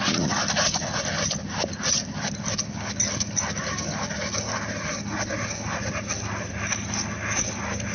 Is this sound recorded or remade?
recorded